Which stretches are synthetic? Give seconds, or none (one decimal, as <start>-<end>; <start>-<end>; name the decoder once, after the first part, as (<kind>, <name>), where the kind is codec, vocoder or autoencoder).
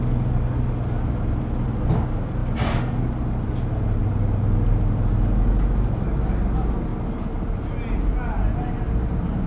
none